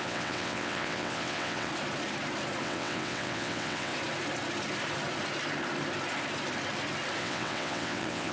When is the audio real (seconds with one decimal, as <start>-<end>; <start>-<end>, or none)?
1.7-2.6; 3.9-7.2